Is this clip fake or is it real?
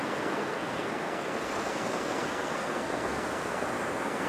fake